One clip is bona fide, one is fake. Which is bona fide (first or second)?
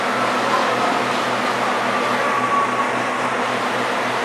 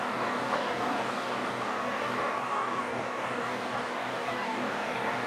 first